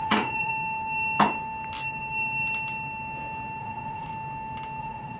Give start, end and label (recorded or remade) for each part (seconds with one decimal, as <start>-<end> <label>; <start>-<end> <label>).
0.0-0.5 remade; 0.5-3.6 recorded; 3.6-4.1 remade; 4.1-4.8 recorded; 4.8-5.2 remade